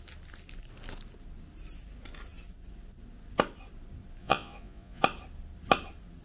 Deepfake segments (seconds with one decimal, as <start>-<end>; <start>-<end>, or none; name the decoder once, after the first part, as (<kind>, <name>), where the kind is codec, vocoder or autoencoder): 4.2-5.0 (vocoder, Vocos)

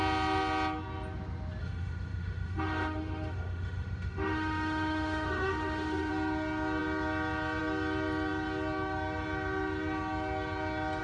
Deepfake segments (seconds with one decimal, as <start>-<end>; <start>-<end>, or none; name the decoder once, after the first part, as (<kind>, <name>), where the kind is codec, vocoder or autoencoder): 1.6-6.1 (autoencoder, DAC-VAE)

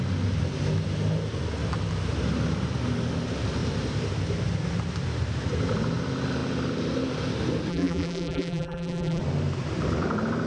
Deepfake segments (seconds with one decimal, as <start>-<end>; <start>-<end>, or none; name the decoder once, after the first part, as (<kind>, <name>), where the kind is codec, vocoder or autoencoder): 7.7-9.2 (vocoder, BigVGAN v2)

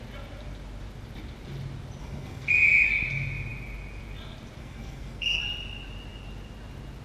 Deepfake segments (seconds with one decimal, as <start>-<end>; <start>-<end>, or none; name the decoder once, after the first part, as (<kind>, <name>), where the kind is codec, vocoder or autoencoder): 2.0-2.5 (codec, SNAC); 4.6-5.4

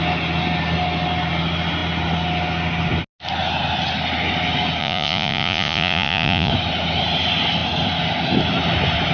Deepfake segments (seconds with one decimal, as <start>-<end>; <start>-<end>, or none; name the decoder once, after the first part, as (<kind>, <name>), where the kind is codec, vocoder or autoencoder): 4.8-6.5 (vocoder, Vocos)

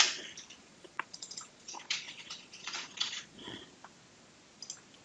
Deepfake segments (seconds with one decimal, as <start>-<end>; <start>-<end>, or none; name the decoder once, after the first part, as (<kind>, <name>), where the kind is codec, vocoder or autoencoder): 0.6-3.6 (vocoder, Vocos)

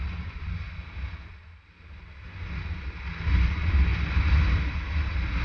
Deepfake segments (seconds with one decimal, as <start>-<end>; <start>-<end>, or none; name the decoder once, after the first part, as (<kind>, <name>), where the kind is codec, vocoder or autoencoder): none